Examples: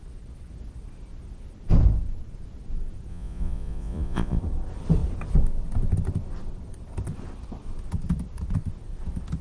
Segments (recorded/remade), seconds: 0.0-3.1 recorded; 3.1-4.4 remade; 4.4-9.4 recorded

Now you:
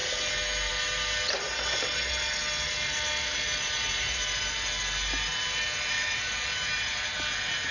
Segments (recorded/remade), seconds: 0.0-7.7 recorded

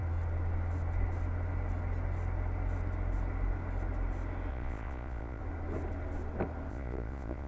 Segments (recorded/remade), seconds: 0.0-4.5 recorded; 4.5-5.4 remade; 5.4-6.7 recorded; 6.7-7.5 remade